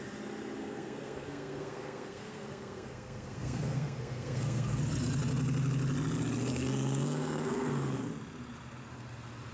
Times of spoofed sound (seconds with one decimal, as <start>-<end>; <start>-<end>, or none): 0.6-4.8; 6.5-8.0